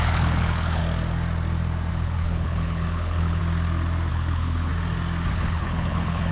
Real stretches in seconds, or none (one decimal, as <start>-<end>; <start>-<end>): 0.8-1.9; 3.4-4.1; 4.7-5.3